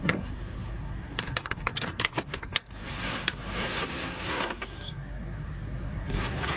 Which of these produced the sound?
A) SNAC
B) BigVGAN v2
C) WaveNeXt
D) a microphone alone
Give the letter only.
A